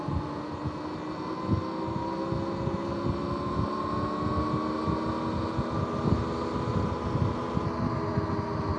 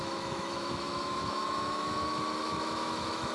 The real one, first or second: first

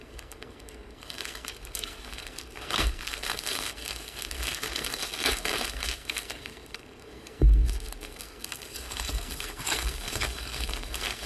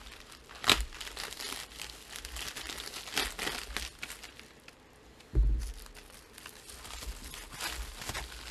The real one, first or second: second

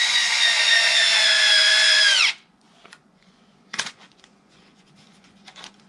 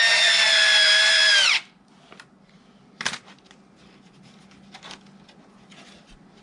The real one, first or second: second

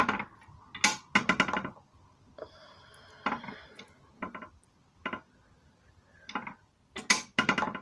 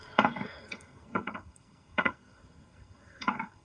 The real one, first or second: first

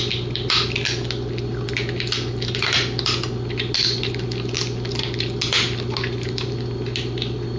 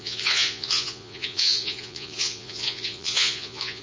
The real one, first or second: first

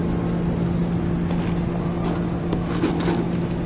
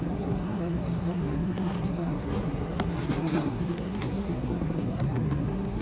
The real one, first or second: first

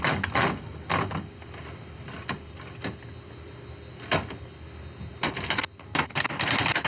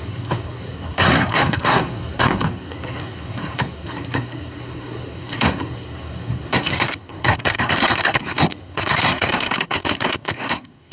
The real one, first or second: first